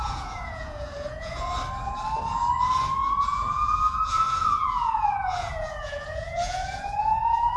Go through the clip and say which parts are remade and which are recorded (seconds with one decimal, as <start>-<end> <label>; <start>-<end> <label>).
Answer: 0.0-1.5 remade; 1.5-3.1 recorded; 3.1-7.6 remade